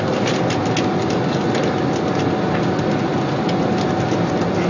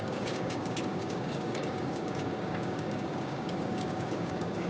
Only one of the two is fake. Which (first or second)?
second